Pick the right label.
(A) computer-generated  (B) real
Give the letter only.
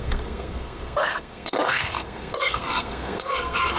A